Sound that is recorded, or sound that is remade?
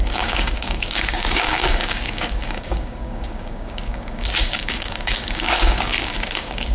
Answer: remade